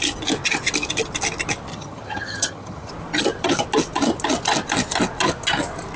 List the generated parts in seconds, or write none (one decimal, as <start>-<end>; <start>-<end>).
1.7-2.9